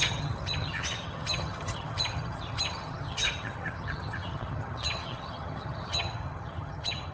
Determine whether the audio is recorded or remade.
remade